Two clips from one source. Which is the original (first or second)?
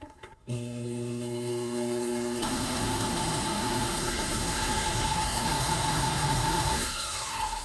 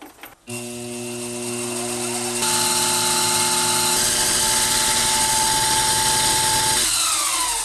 second